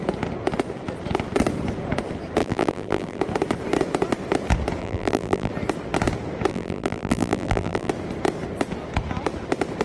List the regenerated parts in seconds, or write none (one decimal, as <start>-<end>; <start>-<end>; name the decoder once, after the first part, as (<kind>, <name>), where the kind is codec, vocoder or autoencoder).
2.4-3.2 (vocoder, BigVGAN v2); 4.8-5.5; 6.5-7.9